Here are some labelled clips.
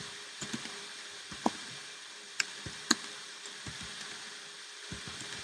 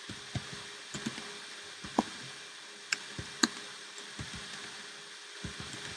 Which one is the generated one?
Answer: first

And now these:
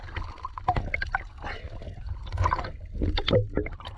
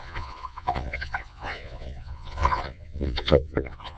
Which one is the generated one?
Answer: second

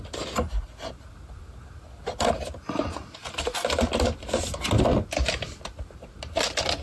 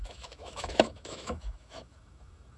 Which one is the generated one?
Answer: second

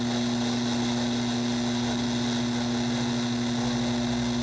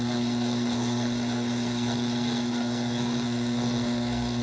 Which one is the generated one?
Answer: second